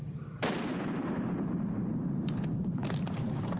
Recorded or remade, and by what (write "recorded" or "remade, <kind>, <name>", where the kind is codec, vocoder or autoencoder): remade, vocoder, BigVGAN v2